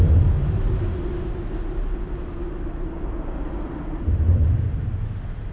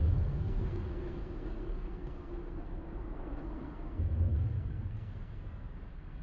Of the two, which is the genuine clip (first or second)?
first